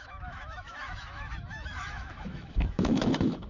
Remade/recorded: remade